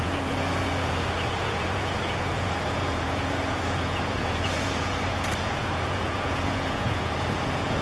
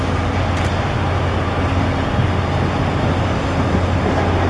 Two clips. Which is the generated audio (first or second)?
first